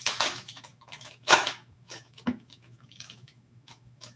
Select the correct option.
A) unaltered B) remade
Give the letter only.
B